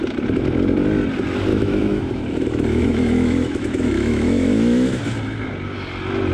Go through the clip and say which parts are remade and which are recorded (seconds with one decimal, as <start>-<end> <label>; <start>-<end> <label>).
0.0-1.5 recorded; 1.5-5.0 remade; 5.0-6.3 recorded